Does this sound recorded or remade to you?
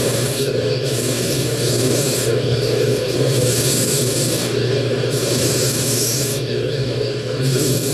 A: remade